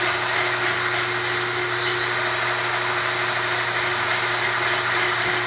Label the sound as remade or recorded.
recorded